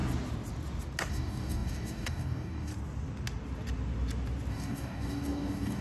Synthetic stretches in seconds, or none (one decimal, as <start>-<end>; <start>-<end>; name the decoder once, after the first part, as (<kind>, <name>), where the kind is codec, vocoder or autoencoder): 1.1-2.7 (codec, DAC); 4.5-5.8